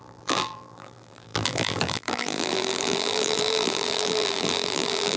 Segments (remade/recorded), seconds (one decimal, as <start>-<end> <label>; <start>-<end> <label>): 0.0-5.2 remade